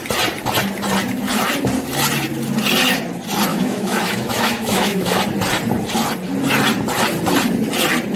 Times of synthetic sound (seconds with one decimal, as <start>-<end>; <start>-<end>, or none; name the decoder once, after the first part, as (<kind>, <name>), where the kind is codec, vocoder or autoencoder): 3.5-5.2 (autoencoder, DAC-VAE)